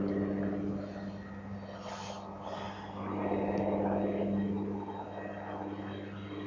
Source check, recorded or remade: recorded